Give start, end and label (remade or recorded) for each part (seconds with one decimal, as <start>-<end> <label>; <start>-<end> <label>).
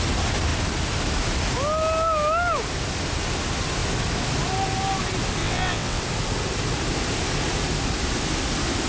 0.0-5.4 recorded; 5.4-6.0 remade; 6.0-8.9 recorded